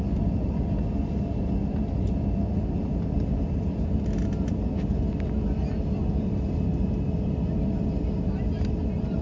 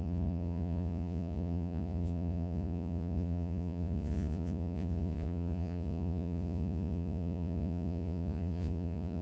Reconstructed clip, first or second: second